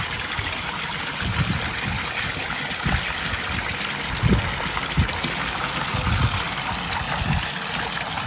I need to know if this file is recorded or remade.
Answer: recorded